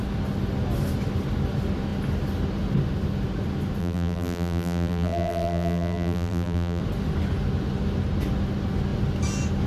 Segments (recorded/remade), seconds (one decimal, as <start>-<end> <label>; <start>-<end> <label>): 0.0-3.8 recorded; 3.8-6.8 remade; 6.8-9.7 recorded